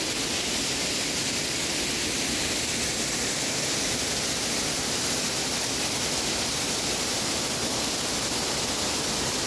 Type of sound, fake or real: real